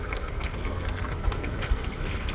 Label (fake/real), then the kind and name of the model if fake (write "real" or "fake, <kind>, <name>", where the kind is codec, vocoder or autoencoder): fake, codec, SNAC